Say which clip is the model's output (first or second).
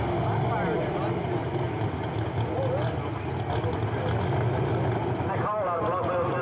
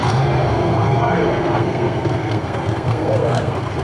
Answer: second